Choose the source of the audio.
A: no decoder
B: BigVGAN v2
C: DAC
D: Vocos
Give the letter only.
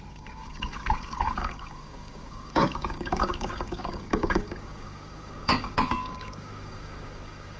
C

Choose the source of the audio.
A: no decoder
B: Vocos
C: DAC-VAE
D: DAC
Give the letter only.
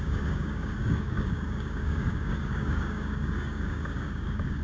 D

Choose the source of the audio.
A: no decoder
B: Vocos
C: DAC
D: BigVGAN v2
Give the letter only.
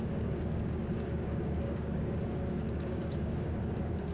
C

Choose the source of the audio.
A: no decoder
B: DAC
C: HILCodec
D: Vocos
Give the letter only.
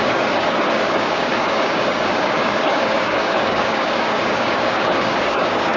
B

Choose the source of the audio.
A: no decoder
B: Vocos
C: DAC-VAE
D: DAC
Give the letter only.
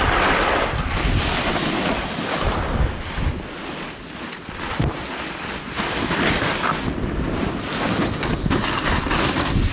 A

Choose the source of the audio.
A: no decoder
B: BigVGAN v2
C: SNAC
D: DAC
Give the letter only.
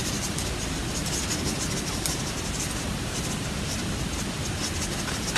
A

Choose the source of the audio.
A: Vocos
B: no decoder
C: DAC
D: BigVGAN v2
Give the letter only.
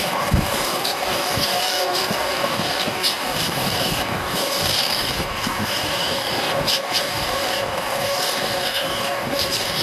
C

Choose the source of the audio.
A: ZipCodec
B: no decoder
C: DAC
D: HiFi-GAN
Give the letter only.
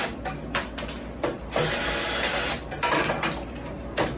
B